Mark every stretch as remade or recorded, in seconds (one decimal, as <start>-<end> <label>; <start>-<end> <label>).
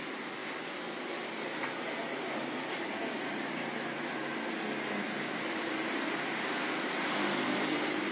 0.0-8.1 remade